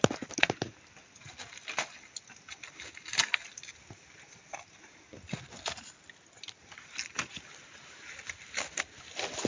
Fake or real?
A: real